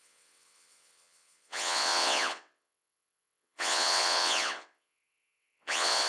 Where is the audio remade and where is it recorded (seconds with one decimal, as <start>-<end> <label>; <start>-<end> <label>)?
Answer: 0.0-6.1 remade